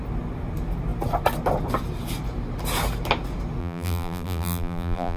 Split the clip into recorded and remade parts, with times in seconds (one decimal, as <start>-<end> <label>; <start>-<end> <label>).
0.0-3.6 recorded; 3.6-5.2 remade